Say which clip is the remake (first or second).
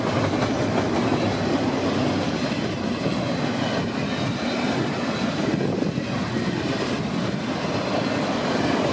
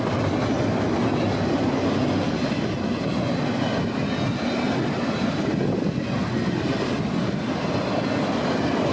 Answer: first